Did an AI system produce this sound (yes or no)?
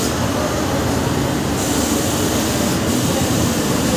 no